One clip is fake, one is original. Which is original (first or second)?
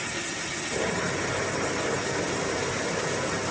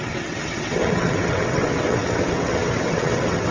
first